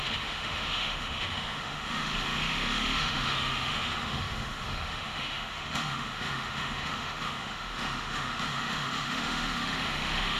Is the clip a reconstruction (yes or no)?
yes